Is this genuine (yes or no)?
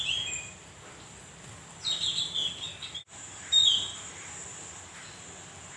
yes